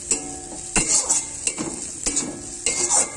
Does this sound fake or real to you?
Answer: real